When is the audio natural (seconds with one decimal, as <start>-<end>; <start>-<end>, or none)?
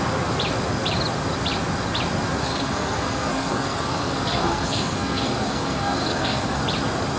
0.0-2.4; 6.6-7.2